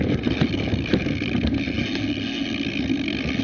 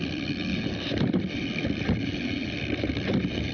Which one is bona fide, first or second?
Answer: first